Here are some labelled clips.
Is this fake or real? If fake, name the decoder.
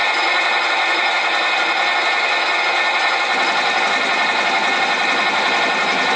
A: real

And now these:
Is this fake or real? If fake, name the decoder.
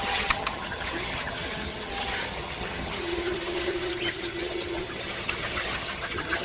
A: fake, vocoder, HiFi-GAN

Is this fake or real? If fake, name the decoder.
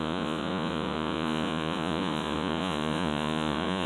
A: fake, vocoder, Vocos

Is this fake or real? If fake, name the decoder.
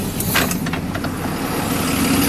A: real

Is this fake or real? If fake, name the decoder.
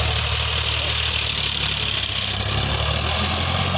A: real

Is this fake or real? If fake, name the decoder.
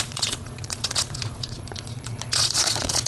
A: fake, vocoder, Vocos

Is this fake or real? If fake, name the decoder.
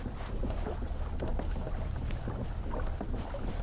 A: real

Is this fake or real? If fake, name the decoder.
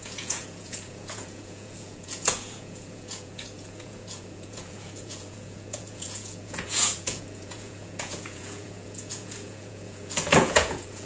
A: fake, vocoder, Vocos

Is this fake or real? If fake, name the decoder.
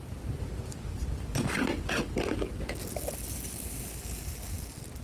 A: real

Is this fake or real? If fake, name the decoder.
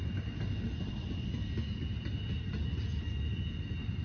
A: real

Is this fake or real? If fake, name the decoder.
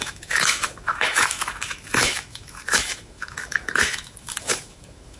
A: fake, autoencoder, DAC-VAE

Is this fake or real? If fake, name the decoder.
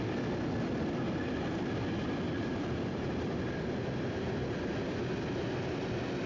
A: real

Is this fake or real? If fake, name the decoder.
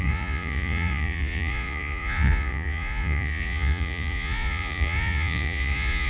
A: fake, vocoder, Vocos